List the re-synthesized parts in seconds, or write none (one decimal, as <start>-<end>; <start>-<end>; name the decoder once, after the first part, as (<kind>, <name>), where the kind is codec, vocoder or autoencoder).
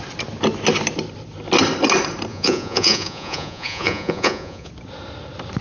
2.3-4.7 (vocoder, Vocos)